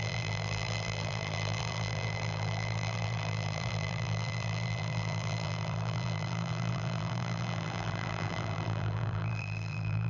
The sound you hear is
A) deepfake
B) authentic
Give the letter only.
A